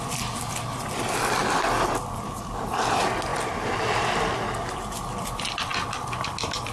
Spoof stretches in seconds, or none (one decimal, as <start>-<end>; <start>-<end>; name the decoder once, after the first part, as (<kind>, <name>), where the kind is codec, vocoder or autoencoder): none